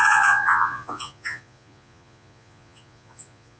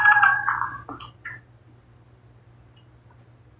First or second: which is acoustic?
second